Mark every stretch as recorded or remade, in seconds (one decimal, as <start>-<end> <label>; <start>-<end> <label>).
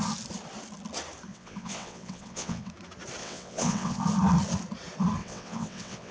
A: 0.0-1.3 recorded; 1.3-2.7 remade; 2.7-3.2 recorded; 3.2-4.0 remade; 4.0-5.2 recorded; 5.2-6.1 remade